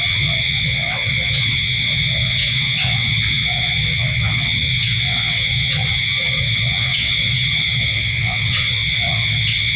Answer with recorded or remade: remade